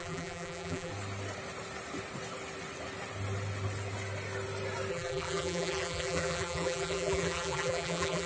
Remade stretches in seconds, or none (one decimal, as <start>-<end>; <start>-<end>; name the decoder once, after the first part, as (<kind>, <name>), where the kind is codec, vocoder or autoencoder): 0.0-0.9 (vocoder, BigVGAN v2); 4.9-8.3